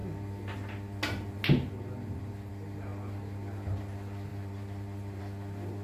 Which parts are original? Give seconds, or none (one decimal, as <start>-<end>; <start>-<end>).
0.0-4.3; 5.2-5.8